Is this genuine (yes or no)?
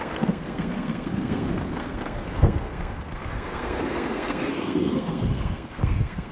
no